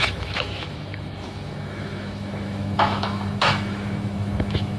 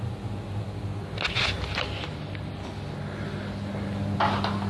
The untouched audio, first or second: second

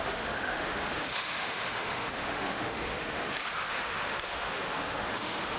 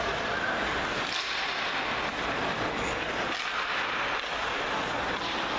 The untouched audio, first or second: second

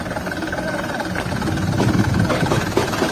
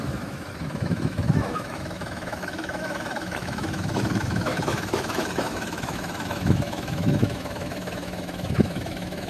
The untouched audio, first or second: first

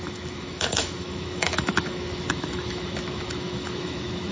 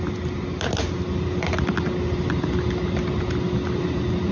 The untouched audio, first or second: second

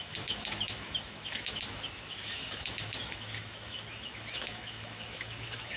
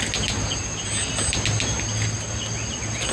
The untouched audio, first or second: second